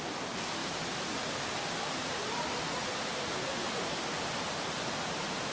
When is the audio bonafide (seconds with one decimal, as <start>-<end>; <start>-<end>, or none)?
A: 0.0-0.6; 1.3-2.0